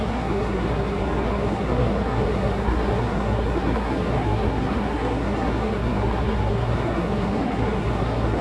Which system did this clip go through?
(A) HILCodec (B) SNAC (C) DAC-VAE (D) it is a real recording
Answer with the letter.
B